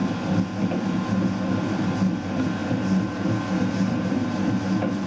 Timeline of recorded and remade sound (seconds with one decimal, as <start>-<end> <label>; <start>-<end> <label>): 0.0-0.6 remade; 0.6-2.6 recorded; 2.6-4.5 remade; 4.5-5.1 recorded